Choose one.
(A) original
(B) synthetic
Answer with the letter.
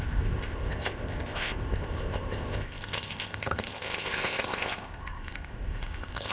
B